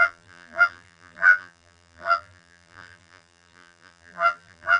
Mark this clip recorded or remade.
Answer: remade